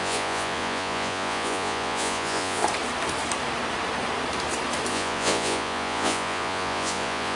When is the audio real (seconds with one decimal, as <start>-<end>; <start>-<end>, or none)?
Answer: 2.6-4.9